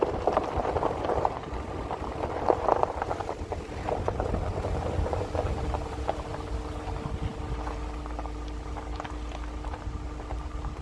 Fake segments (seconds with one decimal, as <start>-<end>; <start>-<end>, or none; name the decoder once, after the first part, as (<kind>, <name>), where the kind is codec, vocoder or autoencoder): none